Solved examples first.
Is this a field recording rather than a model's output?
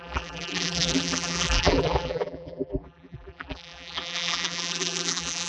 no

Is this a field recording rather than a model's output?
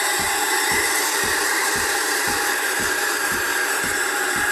no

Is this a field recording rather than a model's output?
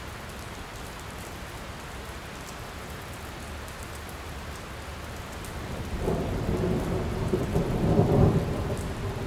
yes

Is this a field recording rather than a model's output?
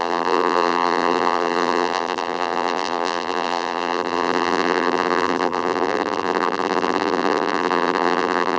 no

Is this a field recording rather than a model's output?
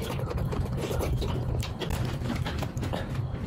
yes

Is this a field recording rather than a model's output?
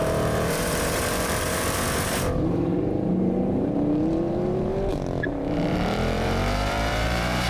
no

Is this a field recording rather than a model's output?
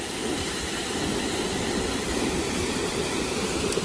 yes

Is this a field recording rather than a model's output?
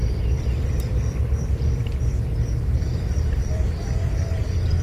no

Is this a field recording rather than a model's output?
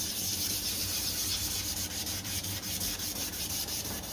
no